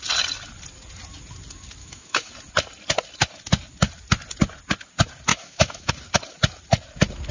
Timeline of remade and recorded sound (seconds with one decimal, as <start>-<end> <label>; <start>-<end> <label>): 0.0-1.8 recorded; 1.8-2.3 remade; 2.3-5.3 recorded; 5.3-5.9 remade; 5.9-7.3 recorded